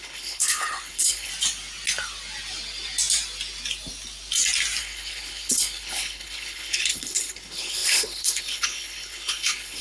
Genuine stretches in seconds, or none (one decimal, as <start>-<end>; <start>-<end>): 1.3-4.8